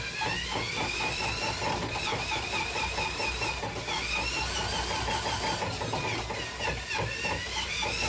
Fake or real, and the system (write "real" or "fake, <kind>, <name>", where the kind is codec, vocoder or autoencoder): real